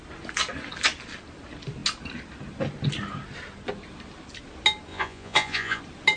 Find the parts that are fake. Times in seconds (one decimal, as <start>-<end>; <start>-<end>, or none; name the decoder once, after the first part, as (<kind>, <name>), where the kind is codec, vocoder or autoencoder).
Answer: 4.9-5.8 (vocoder, Vocos)